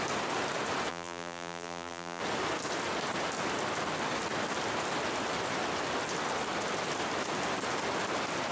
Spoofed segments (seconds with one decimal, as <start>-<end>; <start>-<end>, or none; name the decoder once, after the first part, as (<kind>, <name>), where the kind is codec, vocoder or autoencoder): 0.9-2.2 (vocoder, BigVGAN v2)